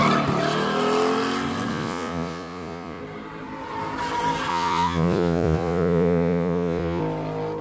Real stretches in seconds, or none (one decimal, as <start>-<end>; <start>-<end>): 0.0-1.7; 3.0-4.5; 7.0-7.6